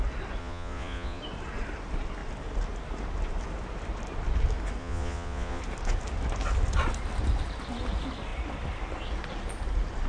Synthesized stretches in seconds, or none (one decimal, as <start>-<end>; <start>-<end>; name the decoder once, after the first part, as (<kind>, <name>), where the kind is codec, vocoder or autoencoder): 0.4-1.2 (vocoder, Vocos); 4.8-5.6